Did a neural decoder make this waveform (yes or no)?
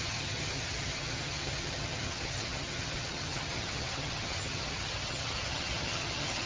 yes